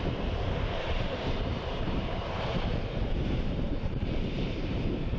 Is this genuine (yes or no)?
no